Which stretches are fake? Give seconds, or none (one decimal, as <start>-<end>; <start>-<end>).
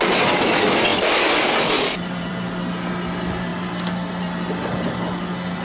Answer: 0.9-2.3